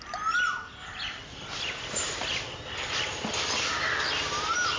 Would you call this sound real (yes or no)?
yes